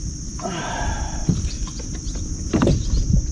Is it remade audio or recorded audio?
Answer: recorded